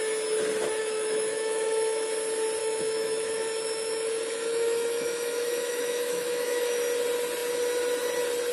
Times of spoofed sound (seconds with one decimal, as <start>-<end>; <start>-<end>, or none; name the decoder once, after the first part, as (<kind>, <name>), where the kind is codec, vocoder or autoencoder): 0.8-2.1 (autoencoder, DAC-VAE); 2.6-6.8